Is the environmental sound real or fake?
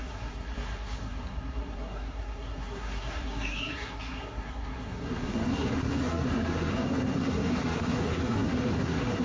fake